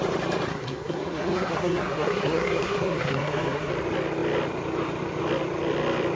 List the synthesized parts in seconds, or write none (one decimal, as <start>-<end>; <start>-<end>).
0.5-3.7